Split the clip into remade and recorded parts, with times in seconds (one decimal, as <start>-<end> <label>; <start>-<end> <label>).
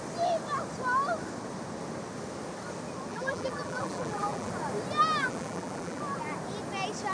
0.0-3.1 recorded; 3.1-4.5 remade; 4.5-5.2 recorded; 5.2-6.0 remade; 6.0-7.1 recorded